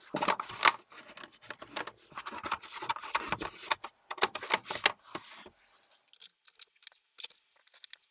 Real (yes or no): yes